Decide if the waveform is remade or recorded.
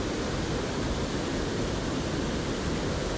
recorded